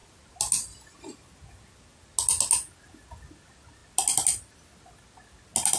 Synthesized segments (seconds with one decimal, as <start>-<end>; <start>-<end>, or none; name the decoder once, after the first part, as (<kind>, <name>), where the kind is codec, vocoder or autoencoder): none